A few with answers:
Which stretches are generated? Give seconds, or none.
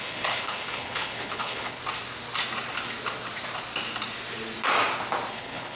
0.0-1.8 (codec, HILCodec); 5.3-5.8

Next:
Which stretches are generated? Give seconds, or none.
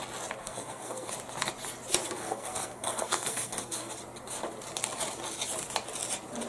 0.4-1.1 (codec, SNAC); 2.0-3.9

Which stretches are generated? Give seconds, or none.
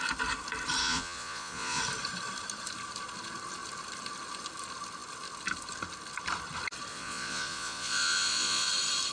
0.8-1.8 (vocoder, Vocos); 6.9-8.7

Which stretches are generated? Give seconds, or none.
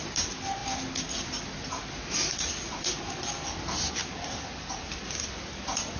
4.0-4.8 (vocoder, BigVGAN v2)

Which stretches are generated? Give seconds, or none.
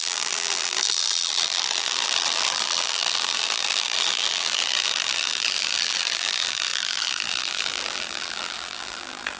0.0-9.4 (vocoder, BigVGAN v2)